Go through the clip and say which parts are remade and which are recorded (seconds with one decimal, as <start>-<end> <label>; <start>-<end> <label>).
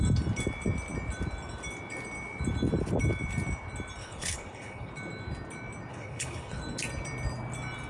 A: 0.0-4.0 recorded; 4.0-4.9 remade; 4.9-5.9 recorded; 5.9-6.6 remade; 6.6-7.9 recorded